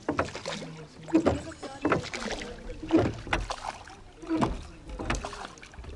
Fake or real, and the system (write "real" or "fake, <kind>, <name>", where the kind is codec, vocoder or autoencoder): real